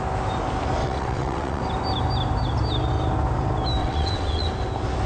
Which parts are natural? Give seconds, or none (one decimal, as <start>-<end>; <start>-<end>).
0.0-0.8; 1.6-3.8; 4.5-5.1